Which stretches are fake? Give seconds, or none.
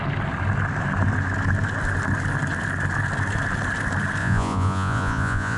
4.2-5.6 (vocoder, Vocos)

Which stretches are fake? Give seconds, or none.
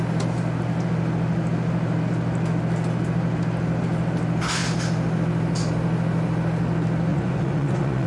7.1-8.1 (vocoder, Vocos)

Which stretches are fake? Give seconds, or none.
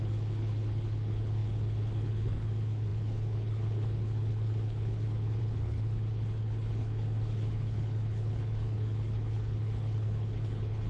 0.0-10.9 (codec, HILCodec)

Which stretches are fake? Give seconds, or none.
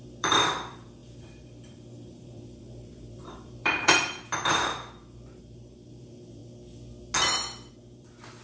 0.0-6.4 (vocoder, BigVGAN v2); 7.7-8.4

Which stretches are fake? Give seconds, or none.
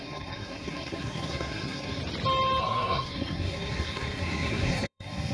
0.0-2.0 (codec, SNAC); 2.6-5.3